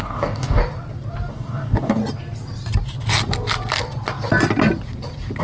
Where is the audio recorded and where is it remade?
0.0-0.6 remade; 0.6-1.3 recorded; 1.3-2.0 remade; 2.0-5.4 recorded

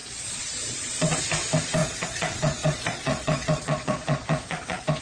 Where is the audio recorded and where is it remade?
0.0-1.2 remade; 1.2-1.8 recorded; 1.8-5.0 remade